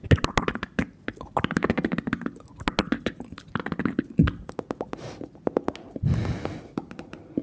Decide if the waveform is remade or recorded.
recorded